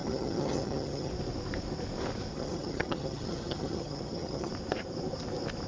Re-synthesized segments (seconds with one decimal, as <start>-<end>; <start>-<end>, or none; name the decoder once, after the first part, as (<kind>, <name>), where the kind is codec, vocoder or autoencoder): 0.0-1.1 (vocoder, HiFi-GAN); 2.3-4.5